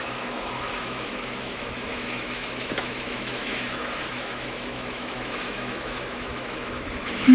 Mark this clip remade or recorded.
remade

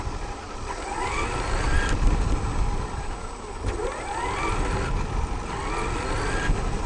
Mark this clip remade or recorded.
recorded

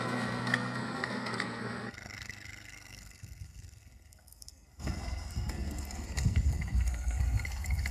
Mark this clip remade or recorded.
remade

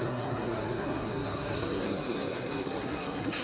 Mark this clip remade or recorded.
remade